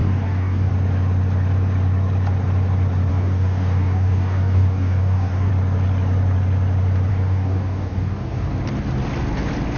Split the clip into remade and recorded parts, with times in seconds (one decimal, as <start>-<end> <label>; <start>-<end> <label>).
0.0-0.7 remade; 0.7-3.1 recorded; 3.1-5.5 remade; 5.5-7.1 recorded; 7.1-8.5 remade; 8.5-9.8 recorded

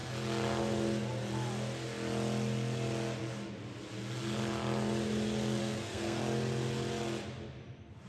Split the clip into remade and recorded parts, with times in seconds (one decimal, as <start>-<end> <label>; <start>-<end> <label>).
0.0-5.6 recorded; 5.6-6.2 remade; 6.2-8.1 recorded

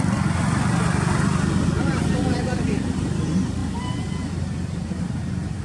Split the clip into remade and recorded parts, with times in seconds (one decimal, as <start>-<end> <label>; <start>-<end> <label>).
0.0-5.6 recorded

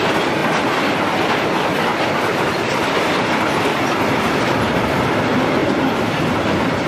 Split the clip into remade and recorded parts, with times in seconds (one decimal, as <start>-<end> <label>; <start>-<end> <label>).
0.0-1.9 recorded; 1.9-2.8 remade; 2.8-5.6 recorded; 5.6-6.2 remade; 6.2-6.9 recorded

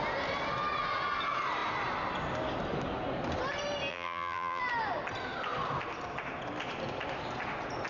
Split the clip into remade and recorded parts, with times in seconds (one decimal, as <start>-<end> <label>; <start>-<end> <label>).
0.0-3.9 recorded; 3.9-4.6 remade; 4.6-7.9 recorded

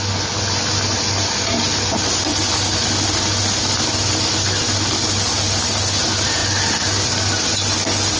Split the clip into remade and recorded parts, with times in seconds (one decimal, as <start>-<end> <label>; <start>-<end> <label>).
0.0-8.2 recorded

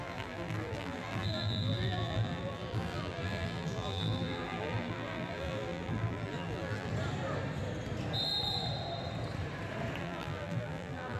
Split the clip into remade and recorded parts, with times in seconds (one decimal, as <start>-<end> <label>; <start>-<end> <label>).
0.0-6.9 remade; 6.9-10.0 recorded; 10.0-11.2 remade